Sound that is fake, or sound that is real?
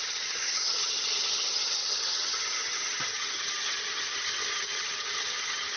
fake